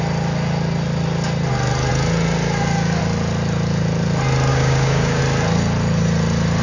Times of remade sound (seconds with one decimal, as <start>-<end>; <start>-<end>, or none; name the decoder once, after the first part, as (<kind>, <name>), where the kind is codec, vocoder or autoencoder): 4.5-5.2 (codec, DAC)